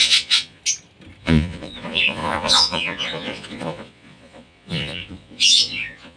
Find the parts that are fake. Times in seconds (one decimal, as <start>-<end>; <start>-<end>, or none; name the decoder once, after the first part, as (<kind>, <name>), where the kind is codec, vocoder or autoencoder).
0.0-0.6 (vocoder, Vocos); 1.2-6.2